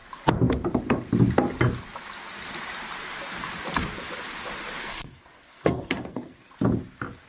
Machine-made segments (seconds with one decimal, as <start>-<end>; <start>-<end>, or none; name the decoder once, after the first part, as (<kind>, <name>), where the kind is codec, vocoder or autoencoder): 4.8-6.5 (codec, SNAC)